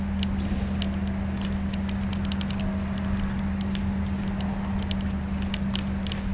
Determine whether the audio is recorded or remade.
recorded